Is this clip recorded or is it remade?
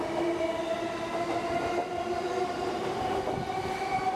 recorded